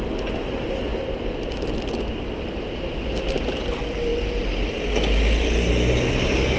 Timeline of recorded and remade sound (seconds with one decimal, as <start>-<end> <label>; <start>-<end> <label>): 0.0-6.6 recorded